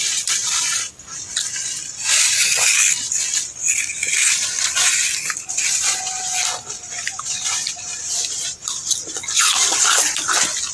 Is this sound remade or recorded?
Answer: recorded